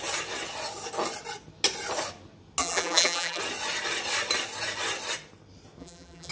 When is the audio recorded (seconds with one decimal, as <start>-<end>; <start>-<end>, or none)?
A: 0.0-2.6; 3.4-5.8